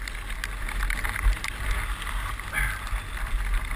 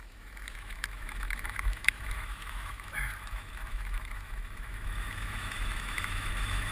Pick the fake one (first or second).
second